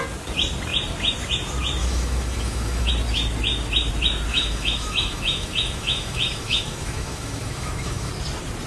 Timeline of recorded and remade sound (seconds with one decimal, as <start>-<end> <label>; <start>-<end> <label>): 0.0-1.8 recorded; 1.8-2.9 remade; 2.9-4.3 recorded; 4.3-8.1 remade; 8.1-8.7 recorded